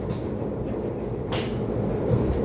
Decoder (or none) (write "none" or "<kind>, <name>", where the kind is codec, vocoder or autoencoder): none